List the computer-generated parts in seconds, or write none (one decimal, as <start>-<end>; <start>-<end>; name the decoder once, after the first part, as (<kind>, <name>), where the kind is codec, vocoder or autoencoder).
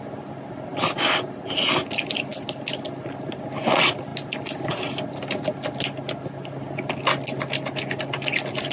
none